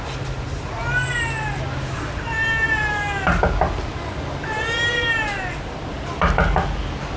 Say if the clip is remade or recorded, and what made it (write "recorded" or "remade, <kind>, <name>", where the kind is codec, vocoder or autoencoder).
recorded